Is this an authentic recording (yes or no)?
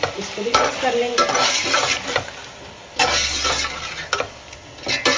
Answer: yes